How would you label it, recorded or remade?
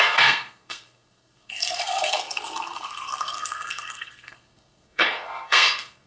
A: remade